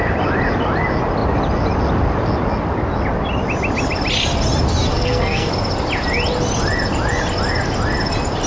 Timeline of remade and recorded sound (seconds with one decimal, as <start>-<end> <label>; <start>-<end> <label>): 0.0-4.9 recorded; 4.9-5.5 remade; 5.5-8.5 recorded

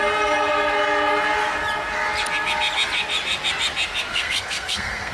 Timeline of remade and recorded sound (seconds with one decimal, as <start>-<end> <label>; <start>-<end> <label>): 0.0-4.1 recorded; 4.1-5.1 remade

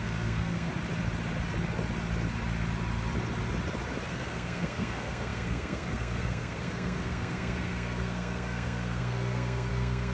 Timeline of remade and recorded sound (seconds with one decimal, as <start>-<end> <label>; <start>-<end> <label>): 0.0-0.7 remade; 0.7-4.1 recorded; 4.1-10.1 remade

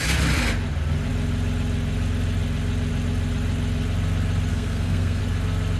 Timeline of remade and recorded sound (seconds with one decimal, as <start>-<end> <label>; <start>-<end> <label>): 0.0-4.5 recorded; 4.5-5.2 remade; 5.2-5.8 recorded

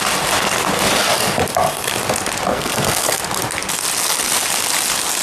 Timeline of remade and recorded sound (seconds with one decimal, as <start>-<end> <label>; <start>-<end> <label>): 0.0-2.5 recorded; 2.5-3.2 remade; 3.2-5.2 recorded

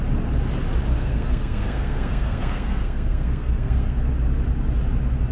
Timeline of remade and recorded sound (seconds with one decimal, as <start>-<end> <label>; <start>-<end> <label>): 0.0-0.9 recorded; 0.9-4.0 remade; 4.0-5.3 recorded

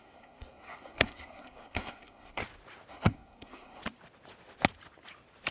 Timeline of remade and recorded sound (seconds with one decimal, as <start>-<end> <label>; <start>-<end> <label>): 0.0-2.4 remade; 2.4-2.9 recorded; 2.9-3.8 remade; 3.8-5.5 recorded

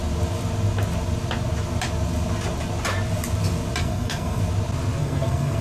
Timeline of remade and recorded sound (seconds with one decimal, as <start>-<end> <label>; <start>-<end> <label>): 0.0-3.8 recorded; 3.8-4.4 remade; 4.4-5.0 recorded; 5.0-5.6 remade